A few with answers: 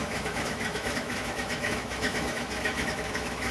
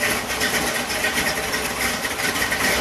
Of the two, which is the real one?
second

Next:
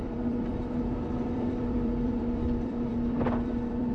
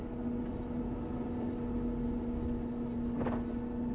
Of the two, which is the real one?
second